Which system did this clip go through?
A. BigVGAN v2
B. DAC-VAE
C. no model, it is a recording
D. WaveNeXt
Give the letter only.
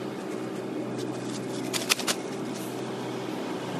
C